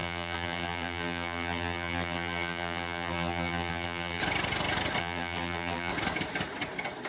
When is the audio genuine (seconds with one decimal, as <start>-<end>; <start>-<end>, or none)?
4.2-5.0; 5.9-7.1

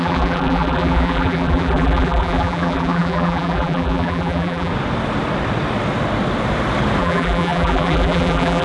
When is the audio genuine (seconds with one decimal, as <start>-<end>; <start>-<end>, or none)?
4.7-7.0

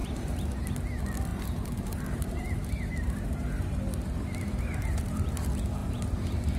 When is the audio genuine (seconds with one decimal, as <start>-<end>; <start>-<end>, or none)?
0.7-1.3; 5.3-5.8

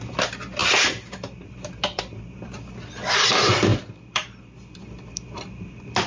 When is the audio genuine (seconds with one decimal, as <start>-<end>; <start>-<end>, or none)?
none